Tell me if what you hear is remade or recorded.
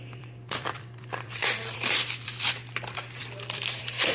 remade